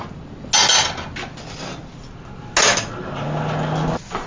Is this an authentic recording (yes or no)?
yes